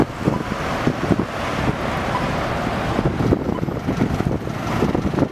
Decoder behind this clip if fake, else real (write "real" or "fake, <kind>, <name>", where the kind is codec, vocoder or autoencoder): real